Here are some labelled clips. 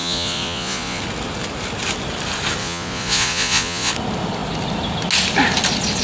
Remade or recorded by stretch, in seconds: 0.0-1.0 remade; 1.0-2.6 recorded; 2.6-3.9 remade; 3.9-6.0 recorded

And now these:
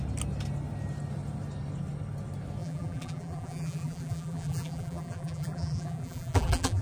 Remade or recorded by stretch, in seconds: 0.0-2.6 recorded; 2.6-6.8 remade